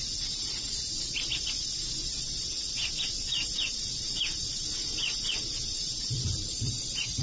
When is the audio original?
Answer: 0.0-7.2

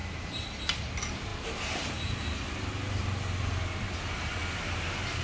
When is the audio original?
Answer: 0.0-5.2

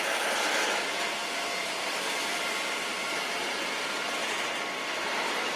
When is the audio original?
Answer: 1.2-1.8; 4.2-5.0

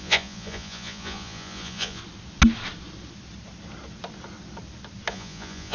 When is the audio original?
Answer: 2.0-5.1

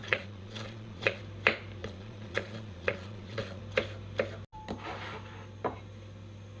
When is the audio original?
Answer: 1.2-1.8; 3.6-6.6

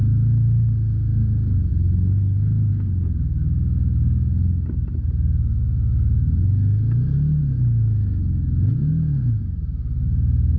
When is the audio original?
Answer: 0.0-7.4; 8.9-10.6

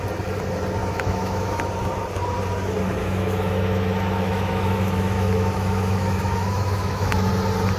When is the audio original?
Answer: 0.0-0.8; 1.6-3.0; 7.3-7.8

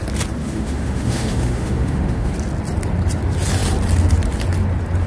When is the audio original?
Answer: 0.0-0.4; 2.3-5.1